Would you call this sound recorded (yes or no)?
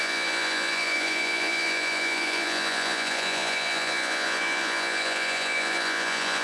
no